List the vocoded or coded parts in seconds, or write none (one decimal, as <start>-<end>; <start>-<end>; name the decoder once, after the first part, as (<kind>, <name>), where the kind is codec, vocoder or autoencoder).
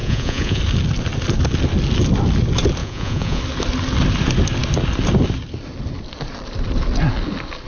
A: 0.0-0.6 (vocoder, Vocos); 2.8-3.4